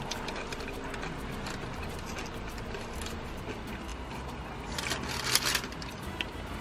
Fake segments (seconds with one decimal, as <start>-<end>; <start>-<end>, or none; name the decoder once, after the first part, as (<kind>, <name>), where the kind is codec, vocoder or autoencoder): none